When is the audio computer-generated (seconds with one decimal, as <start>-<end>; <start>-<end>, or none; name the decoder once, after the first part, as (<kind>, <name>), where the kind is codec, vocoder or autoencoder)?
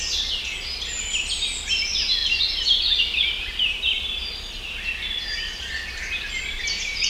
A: none